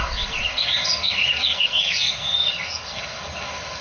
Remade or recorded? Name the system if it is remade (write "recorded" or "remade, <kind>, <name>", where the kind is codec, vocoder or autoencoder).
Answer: remade, codec, SNAC